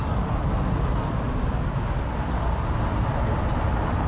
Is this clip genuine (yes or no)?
yes